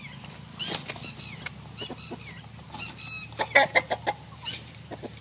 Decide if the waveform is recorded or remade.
recorded